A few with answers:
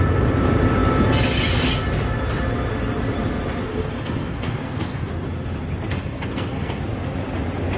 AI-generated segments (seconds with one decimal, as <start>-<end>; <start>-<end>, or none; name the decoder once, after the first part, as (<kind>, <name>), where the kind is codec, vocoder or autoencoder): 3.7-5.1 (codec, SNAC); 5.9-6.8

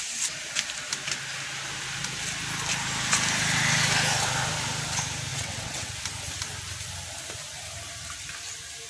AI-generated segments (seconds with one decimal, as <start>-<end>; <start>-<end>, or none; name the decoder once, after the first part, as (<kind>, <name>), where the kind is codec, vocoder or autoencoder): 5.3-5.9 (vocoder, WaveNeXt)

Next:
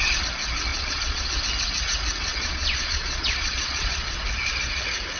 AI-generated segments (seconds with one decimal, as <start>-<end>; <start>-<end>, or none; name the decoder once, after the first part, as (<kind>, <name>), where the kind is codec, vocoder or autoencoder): 0.7-1.3 (vocoder, Vocos); 2.3-4.2

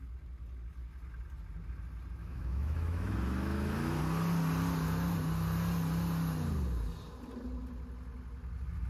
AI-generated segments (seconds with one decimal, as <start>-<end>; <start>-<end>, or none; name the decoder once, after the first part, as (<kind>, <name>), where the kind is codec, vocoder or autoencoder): 2.2-4.0 (autoencoder, DAC-VAE)

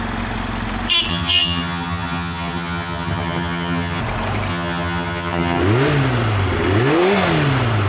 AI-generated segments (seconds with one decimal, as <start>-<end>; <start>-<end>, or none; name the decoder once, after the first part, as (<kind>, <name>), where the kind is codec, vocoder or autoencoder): 1.1-4.0 (vocoder, HiFi-GAN); 4.5-5.6